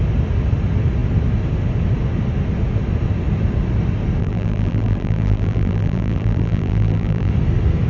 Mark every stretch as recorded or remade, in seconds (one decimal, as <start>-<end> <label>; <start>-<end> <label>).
0.0-4.2 recorded; 4.2-7.3 remade; 7.3-7.9 recorded